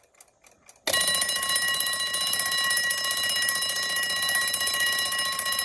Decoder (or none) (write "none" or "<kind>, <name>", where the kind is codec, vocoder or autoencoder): none